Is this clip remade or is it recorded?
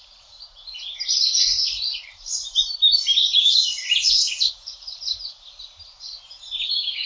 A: remade